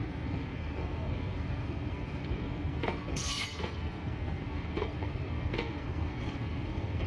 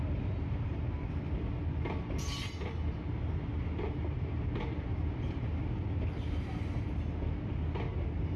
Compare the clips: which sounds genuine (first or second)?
second